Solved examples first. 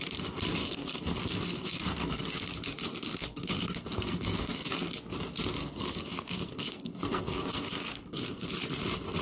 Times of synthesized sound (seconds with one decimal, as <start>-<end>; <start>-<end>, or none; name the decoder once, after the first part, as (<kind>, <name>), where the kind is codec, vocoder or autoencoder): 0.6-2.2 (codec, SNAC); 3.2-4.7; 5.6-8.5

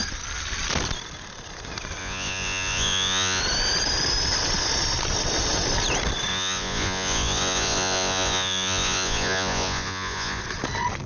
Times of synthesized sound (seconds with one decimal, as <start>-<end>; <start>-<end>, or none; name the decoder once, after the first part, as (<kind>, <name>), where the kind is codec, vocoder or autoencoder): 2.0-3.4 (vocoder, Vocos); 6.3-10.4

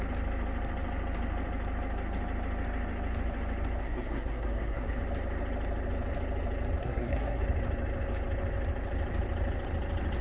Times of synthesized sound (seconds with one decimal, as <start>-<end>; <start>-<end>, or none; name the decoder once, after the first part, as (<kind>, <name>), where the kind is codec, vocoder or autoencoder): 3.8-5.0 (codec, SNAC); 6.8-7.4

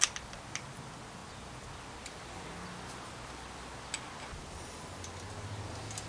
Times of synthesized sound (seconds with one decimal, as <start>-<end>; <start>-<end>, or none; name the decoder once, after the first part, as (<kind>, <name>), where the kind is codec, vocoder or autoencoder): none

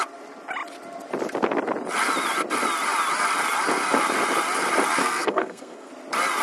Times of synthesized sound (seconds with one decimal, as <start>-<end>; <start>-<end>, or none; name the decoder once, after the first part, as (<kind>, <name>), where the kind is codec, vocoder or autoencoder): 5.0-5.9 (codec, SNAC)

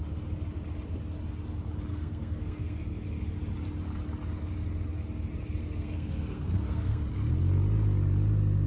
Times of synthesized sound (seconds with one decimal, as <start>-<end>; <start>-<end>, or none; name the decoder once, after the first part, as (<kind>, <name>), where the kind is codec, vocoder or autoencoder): 1.9-2.8 (codec, SNAC); 5.6-7.0

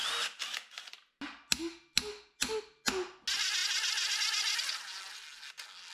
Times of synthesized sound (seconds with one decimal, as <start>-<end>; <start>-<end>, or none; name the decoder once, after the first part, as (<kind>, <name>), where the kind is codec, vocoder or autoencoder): none

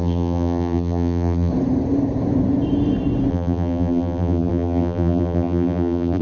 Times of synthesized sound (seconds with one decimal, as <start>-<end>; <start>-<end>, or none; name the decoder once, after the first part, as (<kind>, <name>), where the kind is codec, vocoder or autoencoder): 0.0-1.5 (vocoder, BigVGAN v2); 3.3-6.2